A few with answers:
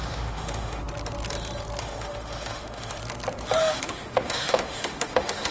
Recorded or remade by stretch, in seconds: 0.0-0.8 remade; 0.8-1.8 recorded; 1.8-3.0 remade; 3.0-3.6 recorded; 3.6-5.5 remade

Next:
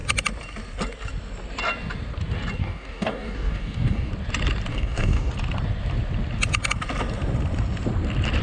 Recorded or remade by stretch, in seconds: 0.0-2.6 recorded; 2.6-4.1 remade; 4.1-4.7 recorded; 4.7-5.3 remade; 5.3-8.4 recorded

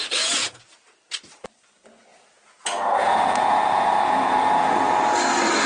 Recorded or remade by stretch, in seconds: 0.0-0.6 remade; 0.6-2.1 recorded; 2.1-5.0 remade; 5.0-5.7 recorded

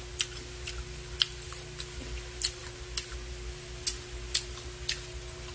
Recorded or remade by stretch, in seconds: 0.0-5.5 recorded

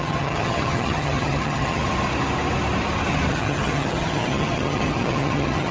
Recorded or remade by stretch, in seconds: 0.0-1.8 remade; 1.8-3.3 recorded; 3.3-5.7 remade

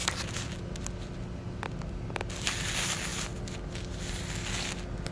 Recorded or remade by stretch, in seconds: 0.0-5.1 recorded

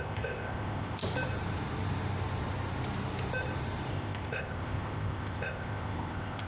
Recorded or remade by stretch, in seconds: 0.0-1.0 remade; 1.0-3.9 recorded; 3.9-6.5 remade